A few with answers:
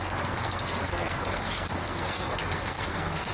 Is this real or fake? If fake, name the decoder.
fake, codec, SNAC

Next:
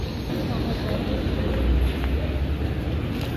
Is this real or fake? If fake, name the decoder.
real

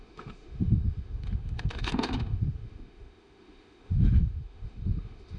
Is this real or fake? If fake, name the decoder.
fake, autoencoder, DAC-VAE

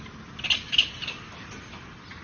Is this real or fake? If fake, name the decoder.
real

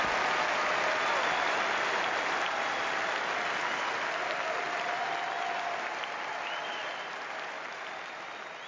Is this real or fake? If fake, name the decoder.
real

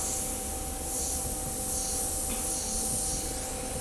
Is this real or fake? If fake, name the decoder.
real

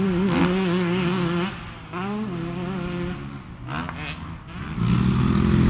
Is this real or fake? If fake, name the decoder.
real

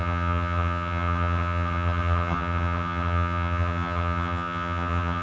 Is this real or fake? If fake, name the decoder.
fake, vocoder, HiFi-GAN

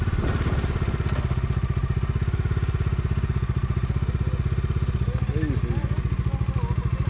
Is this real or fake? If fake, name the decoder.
real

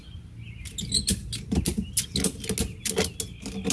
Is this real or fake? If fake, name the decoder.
real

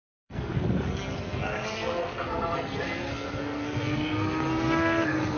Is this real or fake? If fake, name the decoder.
fake, codec, SNAC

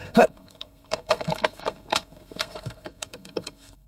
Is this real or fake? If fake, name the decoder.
fake, codec, SNAC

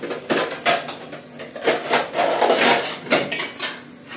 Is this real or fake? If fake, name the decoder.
real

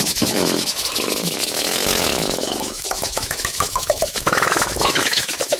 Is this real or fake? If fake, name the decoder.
fake, autoencoder, DAC-VAE